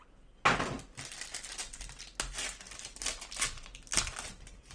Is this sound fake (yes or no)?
no